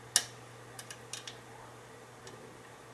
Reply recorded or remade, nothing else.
recorded